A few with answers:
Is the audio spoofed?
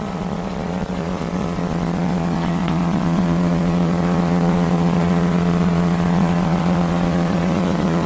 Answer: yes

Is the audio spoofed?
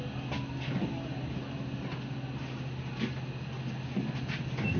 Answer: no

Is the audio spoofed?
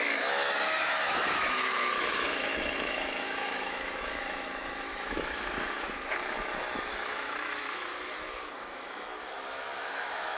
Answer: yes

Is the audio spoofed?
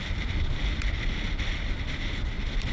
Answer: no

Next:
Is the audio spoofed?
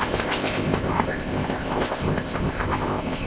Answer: yes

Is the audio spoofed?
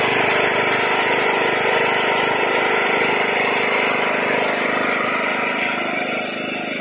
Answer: no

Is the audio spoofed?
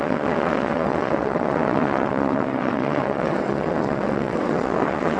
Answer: yes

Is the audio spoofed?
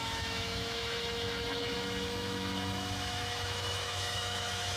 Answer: yes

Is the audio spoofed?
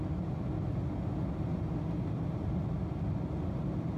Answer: no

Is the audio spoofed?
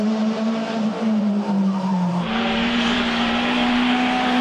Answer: yes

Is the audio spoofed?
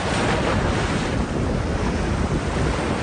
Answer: no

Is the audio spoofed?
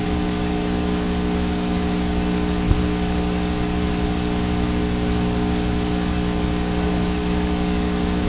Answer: yes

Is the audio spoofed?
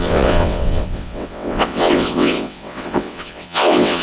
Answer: yes